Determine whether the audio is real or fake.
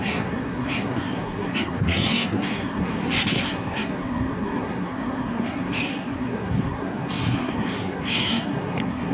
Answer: fake